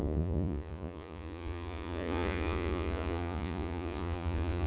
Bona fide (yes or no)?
no